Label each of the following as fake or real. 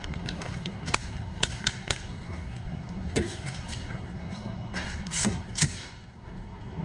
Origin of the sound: fake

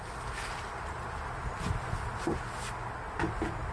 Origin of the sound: real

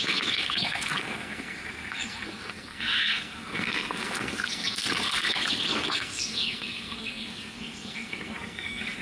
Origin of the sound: fake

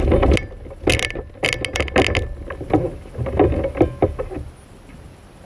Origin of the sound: real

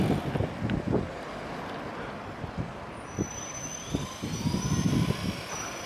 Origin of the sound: real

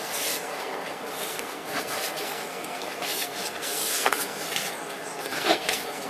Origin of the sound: fake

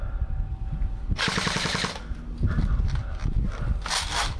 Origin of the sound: real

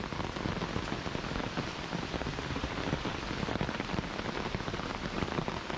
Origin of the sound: real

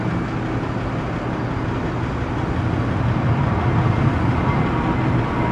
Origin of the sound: real